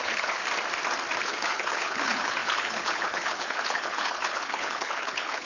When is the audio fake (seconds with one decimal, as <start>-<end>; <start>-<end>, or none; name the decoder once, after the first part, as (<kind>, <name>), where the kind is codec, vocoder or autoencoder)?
0.0-0.4 (codec, HILCodec); 1.2-5.4